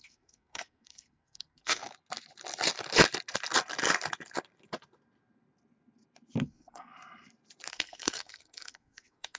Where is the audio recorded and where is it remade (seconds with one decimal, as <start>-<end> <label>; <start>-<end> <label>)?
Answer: 0.0-1.8 remade; 1.8-6.4 recorded; 6.4-6.9 remade; 6.9-7.7 recorded; 7.7-9.4 remade